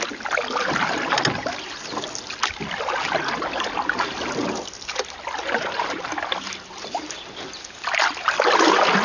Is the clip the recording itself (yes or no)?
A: yes